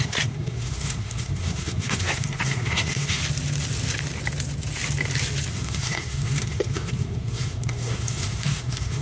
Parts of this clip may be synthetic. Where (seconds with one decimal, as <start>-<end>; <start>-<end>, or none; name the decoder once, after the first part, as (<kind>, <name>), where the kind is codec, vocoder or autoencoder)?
0.0-3.2 (codec, SNAC); 5.5-9.0